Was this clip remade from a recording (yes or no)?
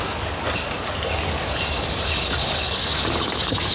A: yes